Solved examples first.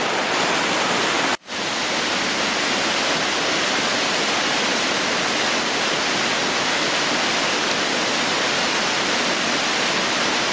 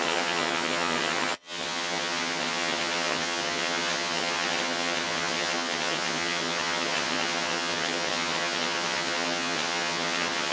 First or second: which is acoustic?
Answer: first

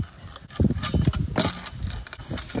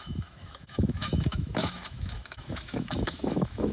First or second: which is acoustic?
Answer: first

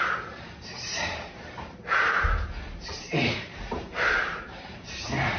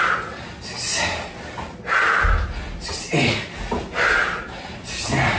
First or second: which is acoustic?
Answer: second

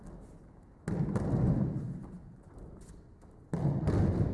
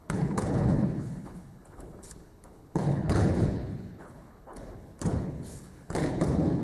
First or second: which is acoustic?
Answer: first